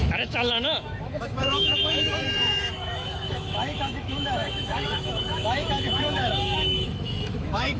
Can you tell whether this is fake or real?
fake